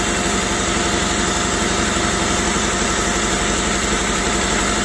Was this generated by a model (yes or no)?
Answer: no